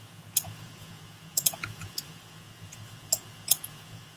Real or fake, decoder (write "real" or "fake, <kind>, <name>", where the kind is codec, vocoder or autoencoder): fake, vocoder, Vocos